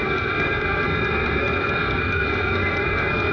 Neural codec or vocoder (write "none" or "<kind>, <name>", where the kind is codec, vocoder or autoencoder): codec, SNAC